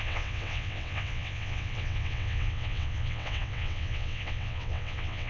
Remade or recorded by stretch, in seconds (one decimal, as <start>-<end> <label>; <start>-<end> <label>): 0.0-5.3 remade